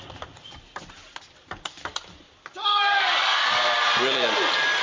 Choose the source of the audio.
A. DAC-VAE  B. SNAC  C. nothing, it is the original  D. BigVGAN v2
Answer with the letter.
D